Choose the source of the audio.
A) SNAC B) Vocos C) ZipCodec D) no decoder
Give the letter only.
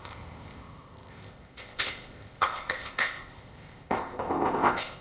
C